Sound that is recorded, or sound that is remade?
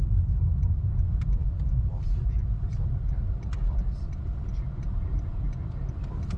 remade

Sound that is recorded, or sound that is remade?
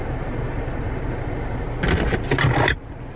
recorded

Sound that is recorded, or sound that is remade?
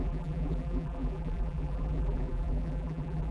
remade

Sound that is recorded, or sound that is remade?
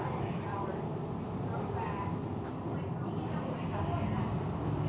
remade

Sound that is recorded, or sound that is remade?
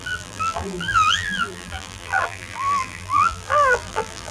remade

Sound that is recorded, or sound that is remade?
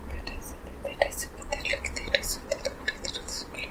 recorded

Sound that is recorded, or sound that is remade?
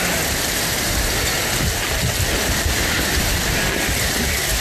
recorded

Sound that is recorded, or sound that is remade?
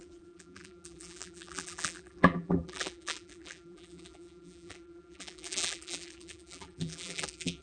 remade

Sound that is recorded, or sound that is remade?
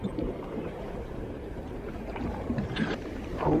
remade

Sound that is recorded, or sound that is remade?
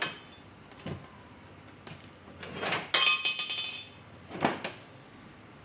recorded